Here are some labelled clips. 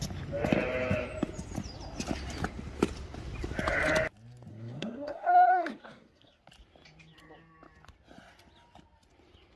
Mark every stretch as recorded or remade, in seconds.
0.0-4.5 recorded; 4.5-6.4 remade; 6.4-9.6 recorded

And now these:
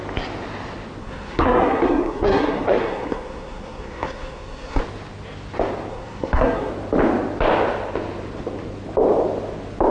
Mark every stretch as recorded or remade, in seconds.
0.0-1.0 recorded; 1.0-4.8 remade; 4.8-5.9 recorded; 5.9-6.7 remade; 6.7-9.9 recorded

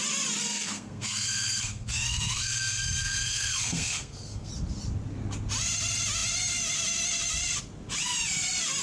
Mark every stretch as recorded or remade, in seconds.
0.0-0.4 recorded; 0.4-4.5 remade; 4.5-8.8 recorded